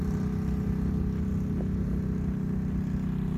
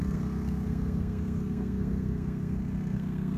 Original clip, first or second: first